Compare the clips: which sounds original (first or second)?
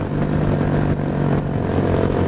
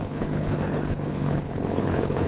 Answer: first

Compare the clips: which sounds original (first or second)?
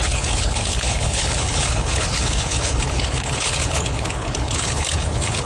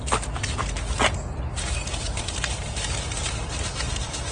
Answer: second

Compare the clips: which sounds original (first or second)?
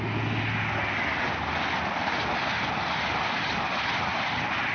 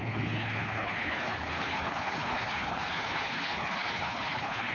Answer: first